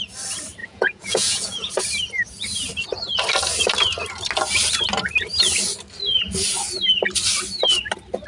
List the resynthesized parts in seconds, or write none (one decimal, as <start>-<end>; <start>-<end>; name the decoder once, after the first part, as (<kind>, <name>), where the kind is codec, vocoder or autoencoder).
0.6-1.7 (vocoder, Vocos)